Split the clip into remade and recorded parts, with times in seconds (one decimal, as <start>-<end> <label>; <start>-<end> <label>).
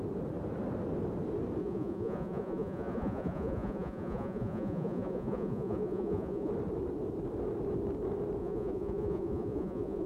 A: 0.0-1.6 recorded; 1.6-6.5 remade; 6.5-8.4 recorded; 8.4-10.1 remade